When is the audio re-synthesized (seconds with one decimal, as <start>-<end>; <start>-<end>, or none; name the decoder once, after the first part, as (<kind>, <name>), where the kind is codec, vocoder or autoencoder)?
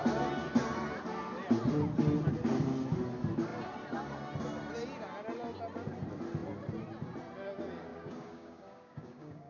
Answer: 7.9-9.5 (codec, DAC)